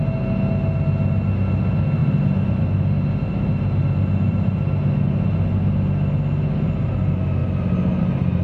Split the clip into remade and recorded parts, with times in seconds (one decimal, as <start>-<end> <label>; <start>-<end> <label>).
0.0-8.4 recorded